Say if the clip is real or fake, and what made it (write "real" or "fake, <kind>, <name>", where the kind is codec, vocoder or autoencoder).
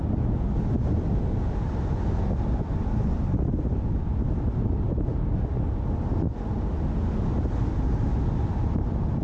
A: real